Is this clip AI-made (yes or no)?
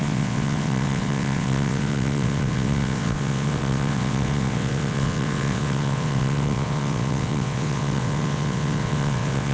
yes